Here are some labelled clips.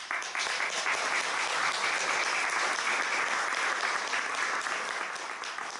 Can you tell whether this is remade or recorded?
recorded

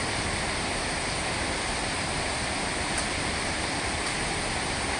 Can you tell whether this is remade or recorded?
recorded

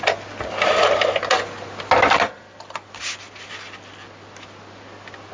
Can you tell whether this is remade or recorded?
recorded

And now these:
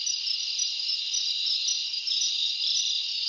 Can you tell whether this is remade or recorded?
recorded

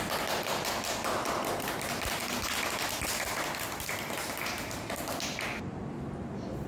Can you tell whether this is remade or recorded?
recorded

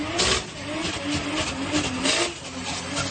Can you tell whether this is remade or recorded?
recorded